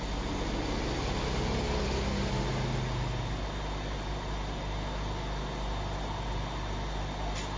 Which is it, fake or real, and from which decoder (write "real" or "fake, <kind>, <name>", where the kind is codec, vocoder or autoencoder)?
real